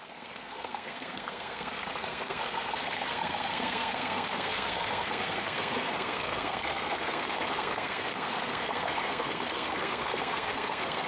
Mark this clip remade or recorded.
remade